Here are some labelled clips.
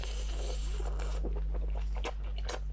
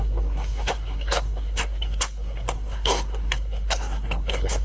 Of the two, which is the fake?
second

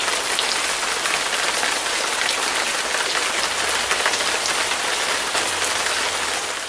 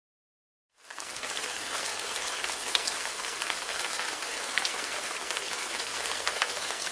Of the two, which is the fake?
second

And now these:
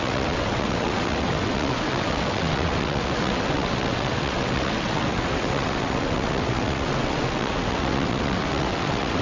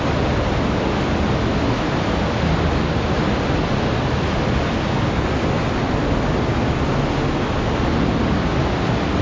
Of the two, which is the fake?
first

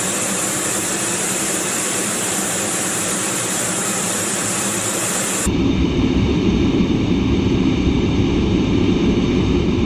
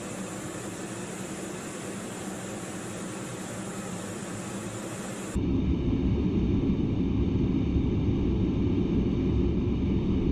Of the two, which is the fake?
first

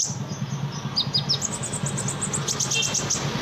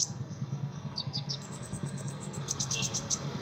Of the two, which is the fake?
second